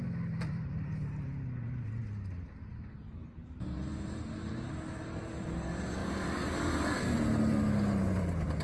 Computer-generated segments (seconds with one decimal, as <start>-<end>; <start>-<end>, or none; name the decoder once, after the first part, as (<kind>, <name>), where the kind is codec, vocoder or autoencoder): none

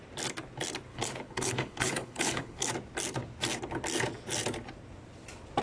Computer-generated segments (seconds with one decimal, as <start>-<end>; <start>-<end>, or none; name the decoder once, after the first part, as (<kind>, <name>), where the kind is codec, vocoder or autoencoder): 0.9-2.7 (codec, HILCodec)